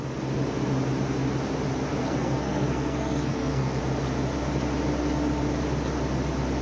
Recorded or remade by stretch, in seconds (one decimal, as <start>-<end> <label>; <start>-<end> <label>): 0.0-2.0 recorded; 2.0-3.8 remade; 3.8-6.6 recorded